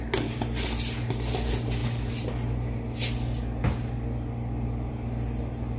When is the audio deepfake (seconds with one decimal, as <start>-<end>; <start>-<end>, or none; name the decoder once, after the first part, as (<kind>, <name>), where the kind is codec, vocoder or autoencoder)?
none

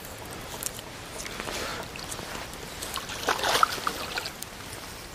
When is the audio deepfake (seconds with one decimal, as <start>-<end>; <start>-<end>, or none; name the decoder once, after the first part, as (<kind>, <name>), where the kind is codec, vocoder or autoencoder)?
none

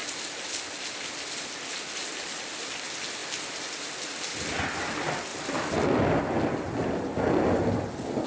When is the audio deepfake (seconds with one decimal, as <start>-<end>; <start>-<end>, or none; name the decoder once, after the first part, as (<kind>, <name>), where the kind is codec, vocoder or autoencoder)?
0.0-2.7 (vocoder, BigVGAN v2); 3.2-4.6; 5.3-6.2

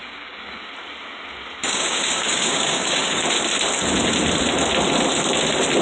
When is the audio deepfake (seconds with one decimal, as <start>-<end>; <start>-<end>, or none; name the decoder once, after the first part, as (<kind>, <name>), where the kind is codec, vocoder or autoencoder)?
0.0-0.7 (codec, DAC); 1.6-3.2

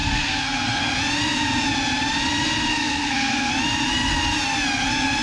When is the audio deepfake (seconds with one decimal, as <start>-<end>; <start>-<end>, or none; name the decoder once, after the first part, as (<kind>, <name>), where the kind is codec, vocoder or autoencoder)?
0.0-0.9 (codec, SNAC); 2.7-3.5

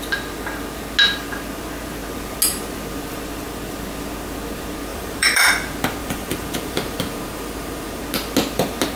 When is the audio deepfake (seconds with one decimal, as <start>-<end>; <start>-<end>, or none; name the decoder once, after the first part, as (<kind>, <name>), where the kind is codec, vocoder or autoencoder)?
4.9-5.5 (vocoder, BigVGAN v2); 6.0-8.0

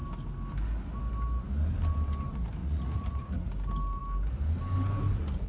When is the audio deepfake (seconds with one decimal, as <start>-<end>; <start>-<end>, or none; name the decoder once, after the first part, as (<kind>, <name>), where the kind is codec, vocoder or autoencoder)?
2.6-3.5 (vocoder, Vocos)

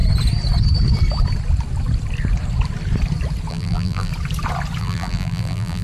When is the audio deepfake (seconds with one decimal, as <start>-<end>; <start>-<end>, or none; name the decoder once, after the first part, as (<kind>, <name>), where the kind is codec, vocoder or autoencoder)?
3.5-4.1 (vocoder, BigVGAN v2); 4.8-5.8